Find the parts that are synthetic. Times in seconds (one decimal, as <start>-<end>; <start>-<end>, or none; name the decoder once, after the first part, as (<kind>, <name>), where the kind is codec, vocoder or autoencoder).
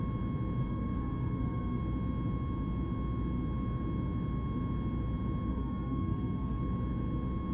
0.6-1.8 (codec, SNAC); 5.5-6.6